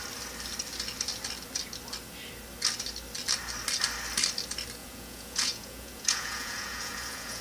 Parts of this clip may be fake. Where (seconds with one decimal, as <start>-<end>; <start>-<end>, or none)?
4.8-7.4